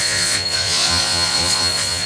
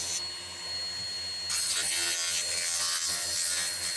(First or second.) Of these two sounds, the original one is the second